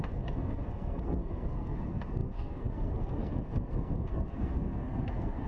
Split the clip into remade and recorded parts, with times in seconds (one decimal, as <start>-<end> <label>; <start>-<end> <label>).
0.0-5.5 remade

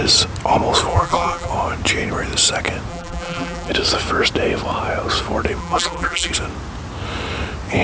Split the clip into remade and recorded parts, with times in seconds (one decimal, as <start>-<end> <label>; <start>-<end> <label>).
0.0-0.9 recorded; 0.9-1.5 remade; 1.5-2.9 recorded; 2.9-3.7 remade; 3.7-5.6 recorded; 5.6-6.3 remade; 6.3-7.8 recorded

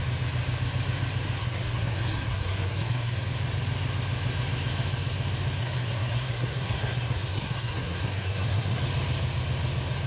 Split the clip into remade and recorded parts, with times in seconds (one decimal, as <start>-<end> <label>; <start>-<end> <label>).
0.0-1.4 recorded; 1.4-3.2 remade; 3.2-5.6 recorded; 5.6-8.8 remade; 8.8-10.1 recorded

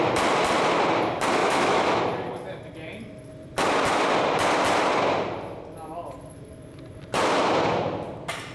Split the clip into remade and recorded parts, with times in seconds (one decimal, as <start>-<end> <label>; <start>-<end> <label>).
0.0-1.4 recorded; 1.4-2.0 remade; 2.0-8.5 recorded

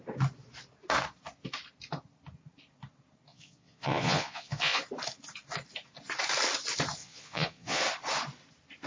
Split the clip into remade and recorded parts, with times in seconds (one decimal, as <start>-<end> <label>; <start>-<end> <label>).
0.0-3.3 recorded; 3.3-4.8 remade; 4.8-7.0 recorded; 7.0-7.8 remade; 7.8-8.9 recorded

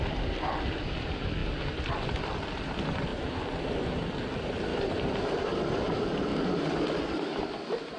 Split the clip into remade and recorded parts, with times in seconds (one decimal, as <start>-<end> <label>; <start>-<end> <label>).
0.0-3.1 recorded; 3.1-3.9 remade; 3.9-4.7 recorded; 4.7-5.7 remade; 5.7-6.3 recorded; 6.3-7.4 remade; 7.4-8.0 recorded

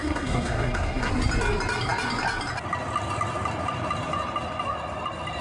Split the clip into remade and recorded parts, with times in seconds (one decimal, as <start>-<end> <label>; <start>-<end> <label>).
0.0-1.1 remade; 1.1-5.4 recorded